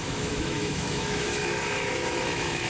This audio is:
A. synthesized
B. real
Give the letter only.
A